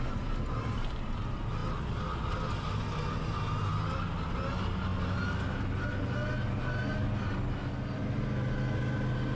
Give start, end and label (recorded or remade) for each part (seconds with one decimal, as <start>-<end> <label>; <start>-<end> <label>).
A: 0.0-9.4 recorded